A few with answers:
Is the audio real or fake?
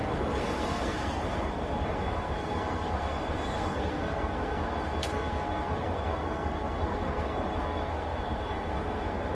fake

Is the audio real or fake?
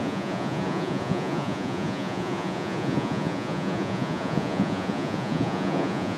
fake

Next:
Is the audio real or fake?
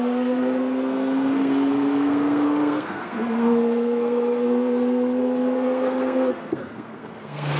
fake